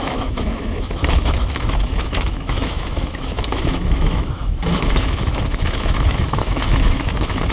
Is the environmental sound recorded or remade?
remade